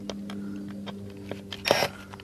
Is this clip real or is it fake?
real